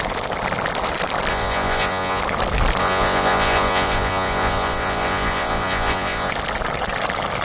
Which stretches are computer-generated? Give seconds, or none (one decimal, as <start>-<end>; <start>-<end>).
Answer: 1.3-2.2; 2.8-6.3